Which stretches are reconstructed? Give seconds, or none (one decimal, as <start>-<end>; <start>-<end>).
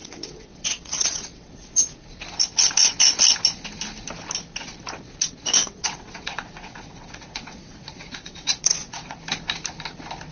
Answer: 0.0-1.5; 5.6-9.2